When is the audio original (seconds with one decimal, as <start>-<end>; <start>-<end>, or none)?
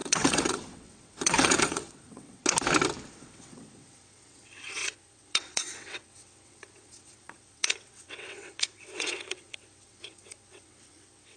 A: 2.4-3.1